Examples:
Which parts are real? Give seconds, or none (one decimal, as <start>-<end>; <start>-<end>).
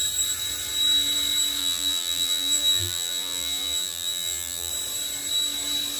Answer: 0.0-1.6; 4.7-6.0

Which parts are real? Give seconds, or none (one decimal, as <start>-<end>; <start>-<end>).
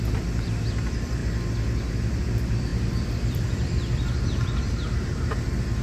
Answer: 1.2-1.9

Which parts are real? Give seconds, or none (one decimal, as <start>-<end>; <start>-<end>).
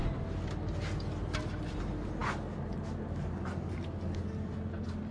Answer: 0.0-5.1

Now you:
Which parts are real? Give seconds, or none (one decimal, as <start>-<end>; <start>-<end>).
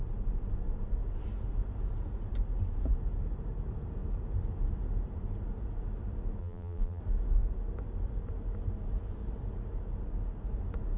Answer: 0.0-6.4; 7.0-11.0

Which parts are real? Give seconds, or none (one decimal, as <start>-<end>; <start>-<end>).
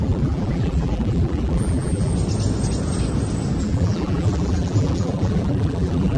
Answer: 2.1-3.6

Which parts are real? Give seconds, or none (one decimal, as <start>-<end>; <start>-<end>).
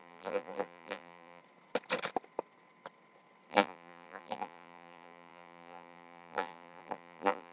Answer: 1.4-3.5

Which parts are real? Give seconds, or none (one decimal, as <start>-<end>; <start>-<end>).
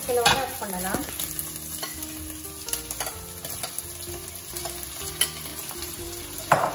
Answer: 0.0-5.5